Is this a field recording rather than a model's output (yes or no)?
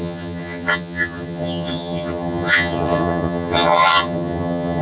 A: no